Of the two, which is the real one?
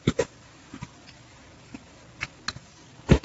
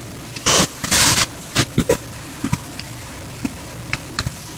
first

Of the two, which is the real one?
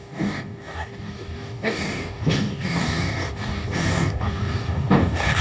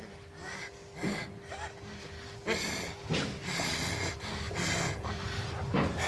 second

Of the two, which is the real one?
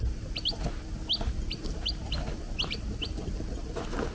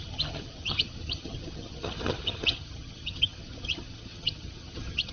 first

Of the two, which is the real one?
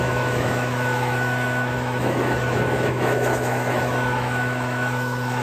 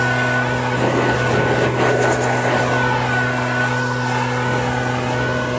second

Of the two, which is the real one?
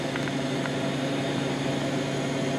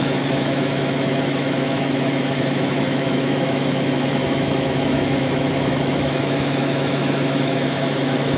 first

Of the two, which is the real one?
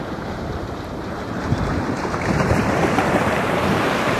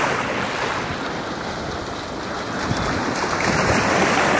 second